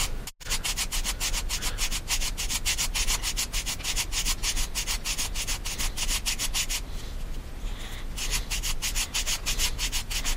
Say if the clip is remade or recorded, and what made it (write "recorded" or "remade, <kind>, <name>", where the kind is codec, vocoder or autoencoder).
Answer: recorded